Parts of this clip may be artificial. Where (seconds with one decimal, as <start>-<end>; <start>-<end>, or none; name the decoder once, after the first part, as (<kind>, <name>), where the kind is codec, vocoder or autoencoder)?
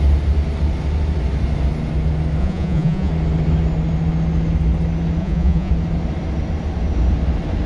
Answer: 2.4-3.1 (vocoder, Vocos); 5.2-5.7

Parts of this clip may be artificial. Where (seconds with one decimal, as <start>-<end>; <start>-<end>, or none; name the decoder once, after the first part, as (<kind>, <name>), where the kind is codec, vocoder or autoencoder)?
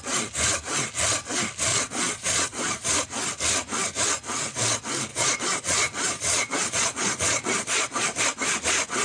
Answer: 1.7-2.9 (vocoder, Vocos); 5.1-8.2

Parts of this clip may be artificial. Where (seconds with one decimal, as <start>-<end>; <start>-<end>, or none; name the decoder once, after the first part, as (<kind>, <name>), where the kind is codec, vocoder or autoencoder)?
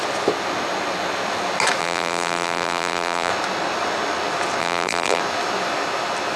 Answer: 1.8-3.3 (vocoder, BigVGAN v2); 4.6-5.2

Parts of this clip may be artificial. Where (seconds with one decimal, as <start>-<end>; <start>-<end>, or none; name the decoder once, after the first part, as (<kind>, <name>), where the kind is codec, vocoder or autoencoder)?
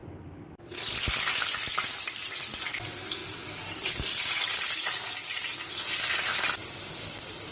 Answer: none